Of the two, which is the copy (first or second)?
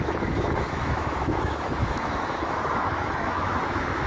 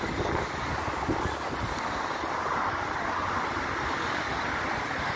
first